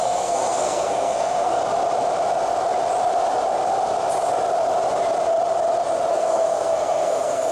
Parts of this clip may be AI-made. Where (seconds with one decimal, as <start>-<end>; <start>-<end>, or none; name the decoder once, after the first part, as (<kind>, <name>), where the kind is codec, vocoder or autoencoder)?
0.0-1.6 (codec, SNAC); 6.1-7.5